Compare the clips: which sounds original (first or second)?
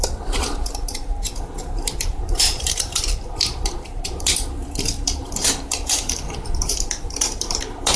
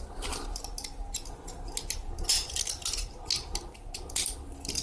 second